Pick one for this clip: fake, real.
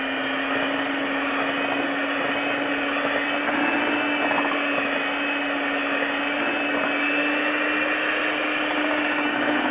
real